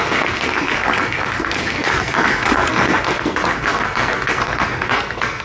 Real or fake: fake